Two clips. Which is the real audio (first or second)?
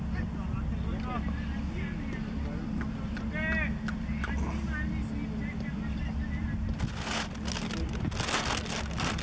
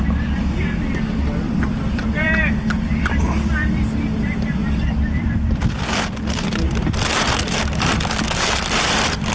first